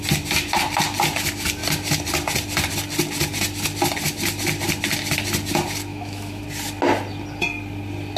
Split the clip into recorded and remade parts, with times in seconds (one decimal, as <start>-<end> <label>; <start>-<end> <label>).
0.0-5.9 recorded; 5.9-6.4 remade; 6.4-8.2 recorded